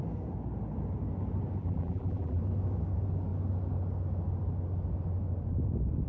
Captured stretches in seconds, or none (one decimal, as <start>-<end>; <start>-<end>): 0.0-1.6; 2.4-6.1